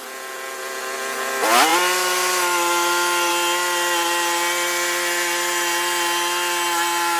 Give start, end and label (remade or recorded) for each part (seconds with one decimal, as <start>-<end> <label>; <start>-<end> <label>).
0.0-7.2 recorded